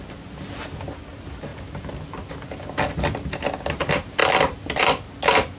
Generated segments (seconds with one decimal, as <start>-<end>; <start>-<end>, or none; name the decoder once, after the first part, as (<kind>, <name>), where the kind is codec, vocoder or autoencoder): none